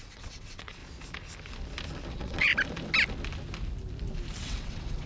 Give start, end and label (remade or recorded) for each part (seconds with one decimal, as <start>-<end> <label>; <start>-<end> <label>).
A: 0.0-0.8 remade; 0.8-2.1 recorded; 2.1-2.5 remade; 2.5-4.4 recorded; 4.4-5.1 remade